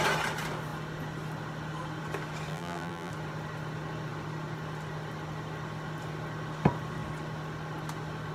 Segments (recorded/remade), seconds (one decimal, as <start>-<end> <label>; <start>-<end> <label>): 0.0-2.5 recorded; 2.5-3.1 remade; 3.1-8.3 recorded